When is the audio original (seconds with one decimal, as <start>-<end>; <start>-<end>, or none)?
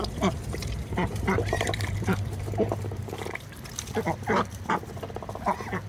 0.0-0.6; 3.9-5.9